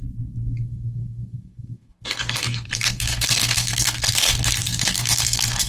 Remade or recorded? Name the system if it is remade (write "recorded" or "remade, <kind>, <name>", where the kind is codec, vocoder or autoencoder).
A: remade, codec, SNAC